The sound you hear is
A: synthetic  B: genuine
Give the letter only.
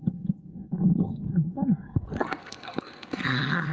A